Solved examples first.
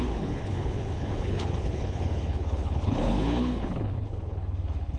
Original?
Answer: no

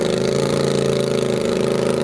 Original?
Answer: yes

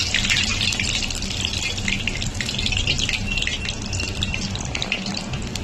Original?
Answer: yes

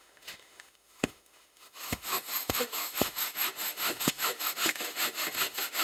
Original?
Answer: no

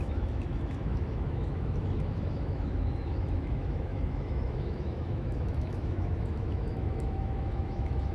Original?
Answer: no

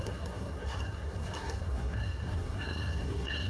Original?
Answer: no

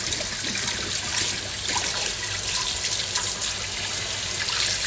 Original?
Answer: yes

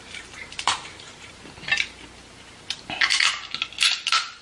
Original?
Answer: yes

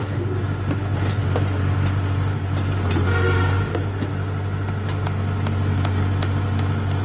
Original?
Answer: yes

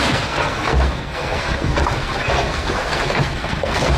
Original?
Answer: no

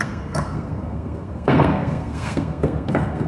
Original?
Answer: no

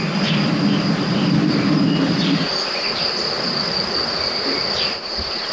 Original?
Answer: yes